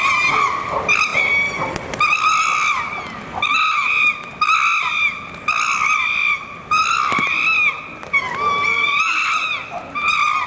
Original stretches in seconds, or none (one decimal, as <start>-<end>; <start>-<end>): 0.0-10.5